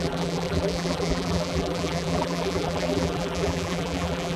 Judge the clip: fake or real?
fake